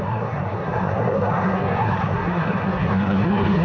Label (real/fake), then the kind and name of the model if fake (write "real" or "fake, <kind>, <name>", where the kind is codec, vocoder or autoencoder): fake, codec, SNAC